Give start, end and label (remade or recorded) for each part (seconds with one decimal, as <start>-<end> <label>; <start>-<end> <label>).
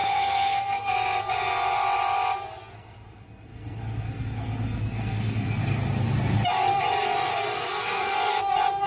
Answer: 0.0-0.9 remade; 0.9-2.6 recorded; 2.6-5.6 remade; 5.6-7.3 recorded; 7.3-8.4 remade; 8.4-8.9 recorded